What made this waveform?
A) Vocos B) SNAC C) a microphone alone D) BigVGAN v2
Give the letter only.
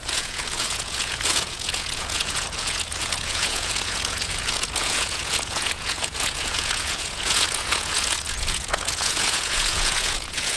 A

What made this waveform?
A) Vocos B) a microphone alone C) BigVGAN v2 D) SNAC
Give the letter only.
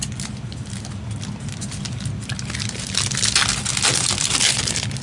B